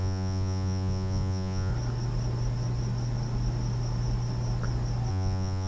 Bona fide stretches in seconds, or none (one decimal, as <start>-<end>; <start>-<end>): 1.7-5.1